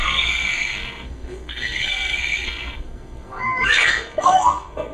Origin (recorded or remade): remade